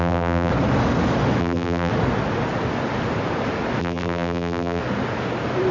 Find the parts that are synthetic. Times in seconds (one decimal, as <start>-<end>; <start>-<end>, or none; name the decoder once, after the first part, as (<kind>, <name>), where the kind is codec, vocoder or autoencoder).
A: 0.0-0.5 (vocoder, BigVGAN v2); 1.4-1.9; 3.8-4.8